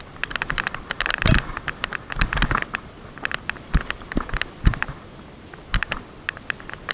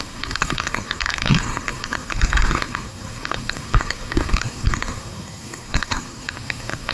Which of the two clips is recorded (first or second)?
first